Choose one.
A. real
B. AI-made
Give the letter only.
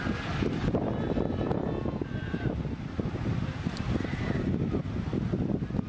A